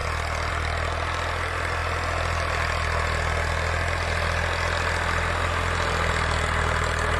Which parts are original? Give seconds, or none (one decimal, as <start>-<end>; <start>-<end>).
0.0-7.2